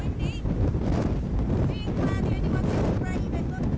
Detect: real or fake real